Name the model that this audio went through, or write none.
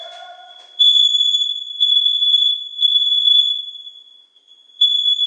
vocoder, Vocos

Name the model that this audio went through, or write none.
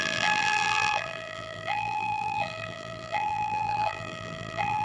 vocoder, BigVGAN v2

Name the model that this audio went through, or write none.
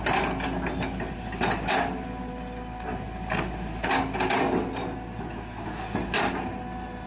none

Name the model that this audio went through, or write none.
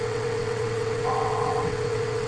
vocoder, WaveNeXt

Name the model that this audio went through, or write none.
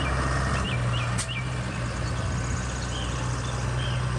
none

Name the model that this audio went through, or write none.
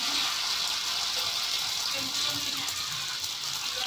none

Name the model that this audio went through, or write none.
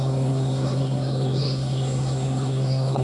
codec, SNAC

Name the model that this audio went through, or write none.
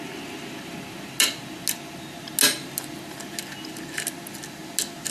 none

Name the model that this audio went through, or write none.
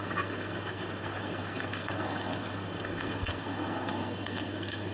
codec, SNAC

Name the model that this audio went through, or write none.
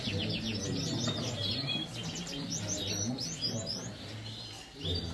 none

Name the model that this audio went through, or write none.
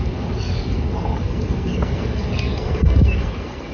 codec, SNAC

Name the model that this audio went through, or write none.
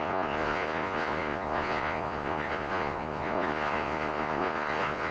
vocoder, Vocos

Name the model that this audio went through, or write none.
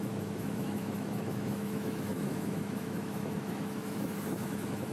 autoencoder, DAC-VAE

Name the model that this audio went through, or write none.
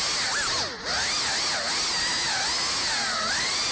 none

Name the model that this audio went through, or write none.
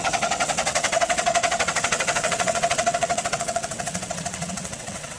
vocoder, WaveNeXt